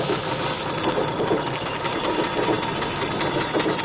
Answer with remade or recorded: recorded